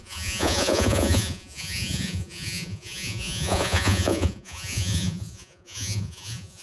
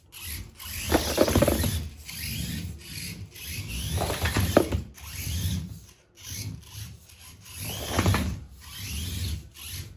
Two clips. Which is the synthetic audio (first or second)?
first